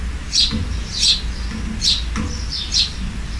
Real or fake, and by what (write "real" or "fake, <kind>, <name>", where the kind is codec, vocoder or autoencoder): real